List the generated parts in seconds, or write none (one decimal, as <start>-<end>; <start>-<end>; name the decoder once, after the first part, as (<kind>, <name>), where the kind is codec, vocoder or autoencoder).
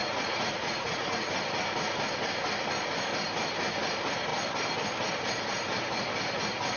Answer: 0.0-1.2 (vocoder, Vocos)